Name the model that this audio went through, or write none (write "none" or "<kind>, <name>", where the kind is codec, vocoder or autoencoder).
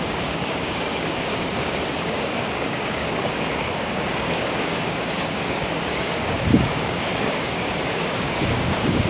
codec, DAC